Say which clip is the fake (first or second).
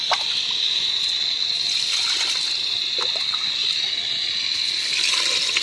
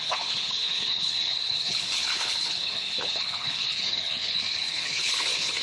second